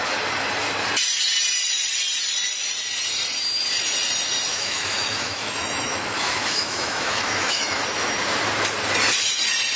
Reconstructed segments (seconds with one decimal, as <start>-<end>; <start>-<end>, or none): 4.5-7.8